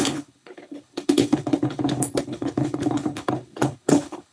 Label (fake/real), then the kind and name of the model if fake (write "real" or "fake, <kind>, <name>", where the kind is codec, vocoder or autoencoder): fake, codec, HILCodec